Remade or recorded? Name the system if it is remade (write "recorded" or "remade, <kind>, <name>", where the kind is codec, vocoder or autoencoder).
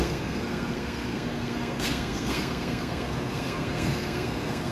remade, codec, SNAC